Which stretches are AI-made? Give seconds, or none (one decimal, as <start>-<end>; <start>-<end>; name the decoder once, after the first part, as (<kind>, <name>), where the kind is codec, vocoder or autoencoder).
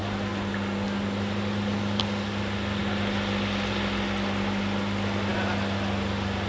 none